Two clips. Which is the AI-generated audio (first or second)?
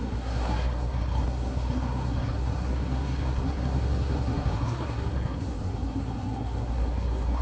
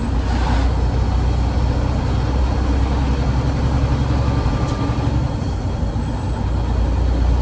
first